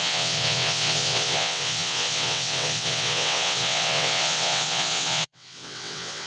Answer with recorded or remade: remade